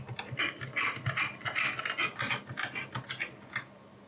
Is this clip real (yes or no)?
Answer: yes